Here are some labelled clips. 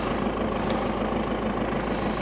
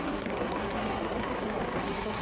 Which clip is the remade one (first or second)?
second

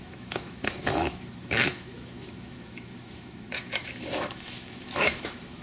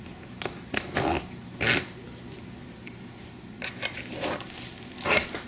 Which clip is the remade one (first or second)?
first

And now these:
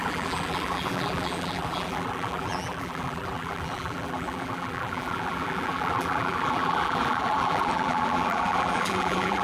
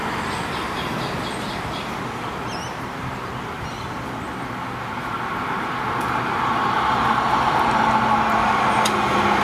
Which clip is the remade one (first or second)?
first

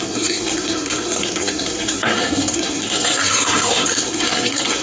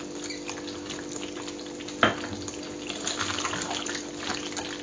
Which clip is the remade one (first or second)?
first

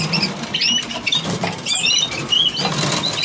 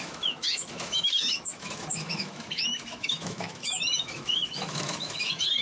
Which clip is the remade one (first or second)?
second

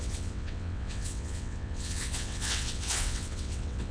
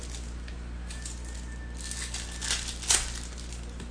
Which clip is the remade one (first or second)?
first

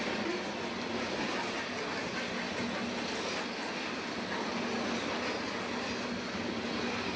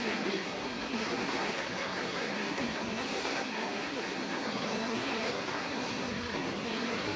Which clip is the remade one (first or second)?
second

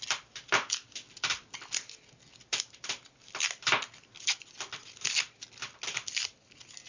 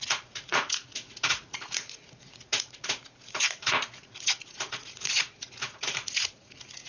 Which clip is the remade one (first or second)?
second